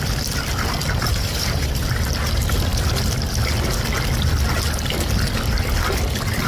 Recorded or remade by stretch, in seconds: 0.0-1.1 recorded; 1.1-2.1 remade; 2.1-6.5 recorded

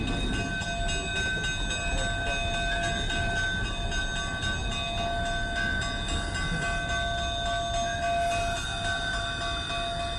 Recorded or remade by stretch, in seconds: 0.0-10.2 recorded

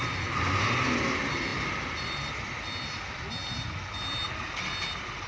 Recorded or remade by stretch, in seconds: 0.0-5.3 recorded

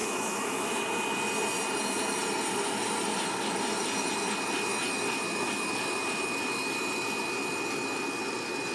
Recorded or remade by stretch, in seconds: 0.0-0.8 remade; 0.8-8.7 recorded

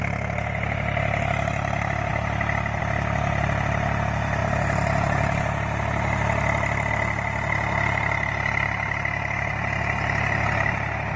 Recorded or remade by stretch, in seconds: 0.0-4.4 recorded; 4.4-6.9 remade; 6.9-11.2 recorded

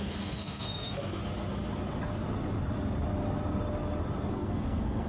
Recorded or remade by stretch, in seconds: 0.0-1.2 remade; 1.2-4.3 recorded; 4.3-5.1 remade

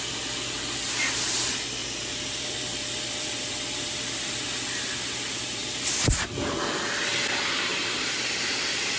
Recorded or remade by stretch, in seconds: 0.0-1.8 recorded; 1.8-4.3 remade; 4.3-5.6 recorded; 5.6-6.5 remade; 6.5-7.7 recorded; 7.7-8.2 remade; 8.2-9.0 recorded